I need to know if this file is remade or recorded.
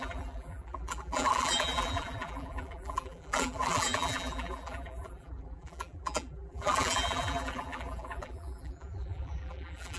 remade